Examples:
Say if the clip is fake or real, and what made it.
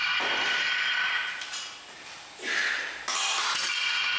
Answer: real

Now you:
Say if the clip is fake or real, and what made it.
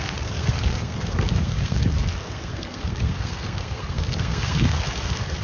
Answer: fake, codec, SNAC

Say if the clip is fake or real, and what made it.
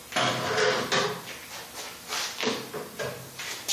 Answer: real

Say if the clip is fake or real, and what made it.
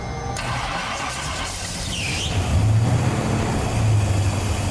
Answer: real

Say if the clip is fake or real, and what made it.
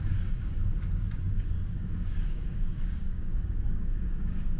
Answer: fake, codec, DAC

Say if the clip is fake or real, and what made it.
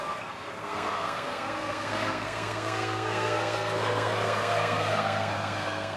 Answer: fake, codec, SNAC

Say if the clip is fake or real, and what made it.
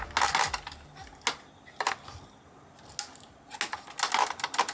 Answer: real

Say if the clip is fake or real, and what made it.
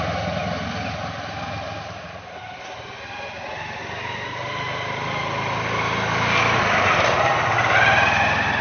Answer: real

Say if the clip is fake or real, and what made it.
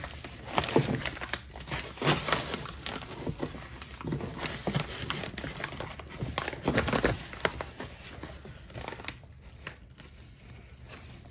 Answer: real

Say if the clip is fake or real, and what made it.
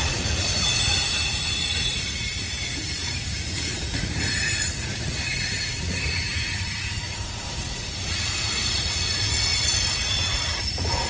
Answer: fake, vocoder, Vocos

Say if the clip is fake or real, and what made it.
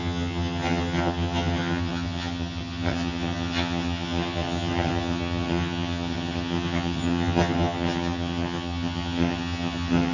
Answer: fake, vocoder, HiFi-GAN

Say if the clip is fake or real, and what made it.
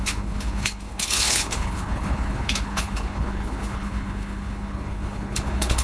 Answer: fake, codec, HILCodec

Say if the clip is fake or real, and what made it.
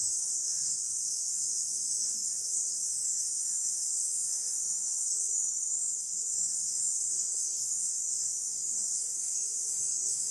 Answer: fake, codec, DAC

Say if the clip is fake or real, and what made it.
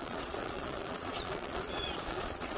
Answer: fake, vocoder, Vocos